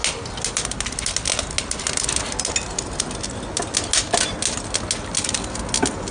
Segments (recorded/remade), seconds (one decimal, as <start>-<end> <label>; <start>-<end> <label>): 0.0-6.1 recorded